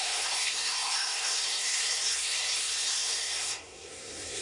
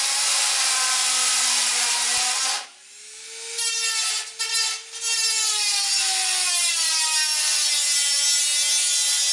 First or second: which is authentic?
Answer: second